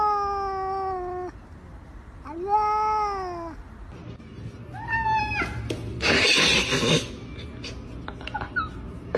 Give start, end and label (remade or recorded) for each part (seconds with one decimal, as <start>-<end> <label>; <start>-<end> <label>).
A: 0.0-5.9 recorded; 5.9-6.6 remade; 6.6-9.2 recorded